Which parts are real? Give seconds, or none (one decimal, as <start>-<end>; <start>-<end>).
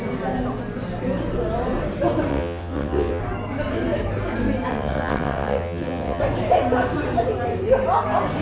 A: 0.0-2.3; 3.2-4.7; 6.2-8.4